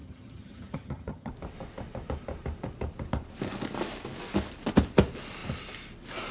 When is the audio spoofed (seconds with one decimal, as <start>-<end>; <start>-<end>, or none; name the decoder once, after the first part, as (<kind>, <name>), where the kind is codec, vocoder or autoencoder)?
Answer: 0.0-1.3 (vocoder, HiFi-GAN)